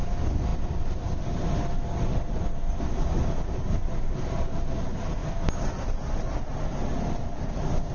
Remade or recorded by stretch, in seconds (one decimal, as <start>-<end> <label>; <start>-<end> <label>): 0.0-0.5 remade; 0.5-1.5 recorded; 1.5-6.5 remade; 6.5-7.4 recorded; 7.4-7.9 remade